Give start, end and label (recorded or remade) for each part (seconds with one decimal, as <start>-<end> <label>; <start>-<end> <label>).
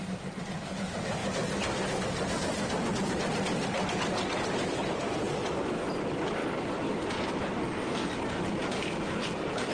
0.0-7.6 recorded; 7.6-8.1 remade; 8.1-9.7 recorded